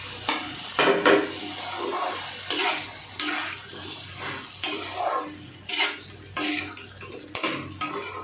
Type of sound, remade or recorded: recorded